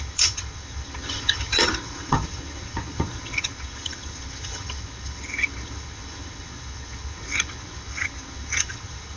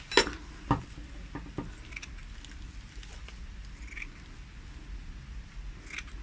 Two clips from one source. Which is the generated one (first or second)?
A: first